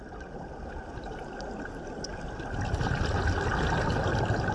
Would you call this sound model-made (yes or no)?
no